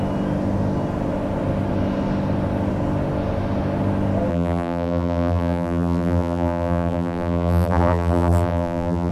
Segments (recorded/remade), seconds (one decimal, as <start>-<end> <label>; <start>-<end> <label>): 0.0-4.3 recorded; 4.3-9.1 remade